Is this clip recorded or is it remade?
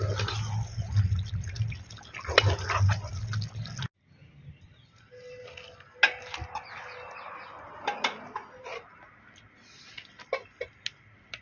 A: recorded